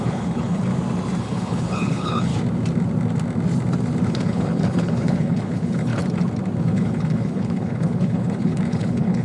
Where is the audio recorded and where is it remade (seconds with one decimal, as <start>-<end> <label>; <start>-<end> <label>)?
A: 0.0-0.7 remade; 0.7-1.2 recorded; 1.2-2.3 remade; 2.3-4.1 recorded; 4.1-5.9 remade; 5.9-6.6 recorded; 6.6-9.2 remade